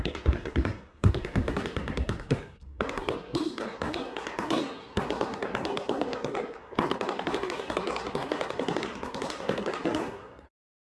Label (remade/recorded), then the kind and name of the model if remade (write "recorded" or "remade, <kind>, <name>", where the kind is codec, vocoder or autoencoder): remade, codec, SNAC